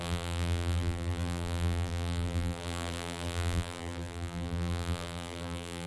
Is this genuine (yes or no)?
no